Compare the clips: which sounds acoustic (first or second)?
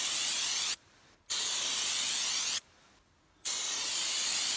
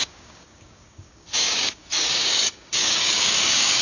first